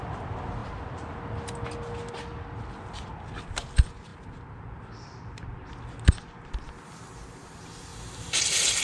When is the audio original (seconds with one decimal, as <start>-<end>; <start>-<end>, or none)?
0.0-8.8